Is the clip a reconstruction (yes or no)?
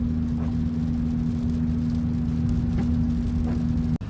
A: no